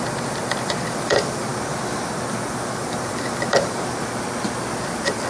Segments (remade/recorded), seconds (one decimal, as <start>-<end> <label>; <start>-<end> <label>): 0.0-1.5 remade; 1.5-4.7 recorded; 4.7-5.3 remade